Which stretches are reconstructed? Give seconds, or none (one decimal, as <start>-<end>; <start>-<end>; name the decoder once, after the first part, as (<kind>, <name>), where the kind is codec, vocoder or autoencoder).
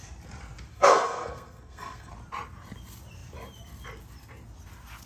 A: 0.7-2.1 (codec, SNAC)